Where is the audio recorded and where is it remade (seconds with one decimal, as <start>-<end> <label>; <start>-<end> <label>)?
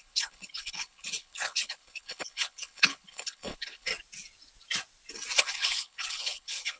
0.0-3.9 remade; 3.9-5.4 recorded; 5.4-6.8 remade